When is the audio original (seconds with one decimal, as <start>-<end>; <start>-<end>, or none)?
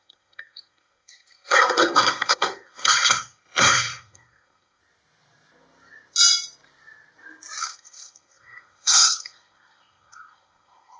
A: 4.8-7.6